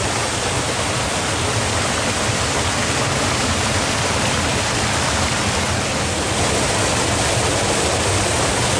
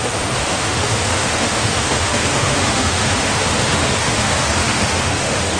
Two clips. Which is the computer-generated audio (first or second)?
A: second